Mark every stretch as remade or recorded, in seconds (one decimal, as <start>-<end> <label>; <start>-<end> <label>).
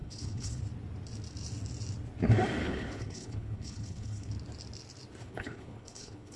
0.0-0.6 remade; 0.6-2.6 recorded; 2.6-4.3 remade; 4.3-5.2 recorded; 5.2-6.4 remade